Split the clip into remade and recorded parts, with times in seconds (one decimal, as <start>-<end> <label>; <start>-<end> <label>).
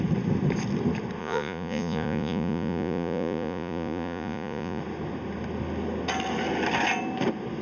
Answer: 0.0-1.2 recorded; 1.2-4.8 remade; 4.8-7.6 recorded